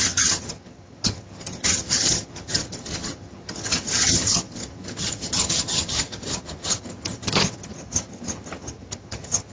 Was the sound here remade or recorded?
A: remade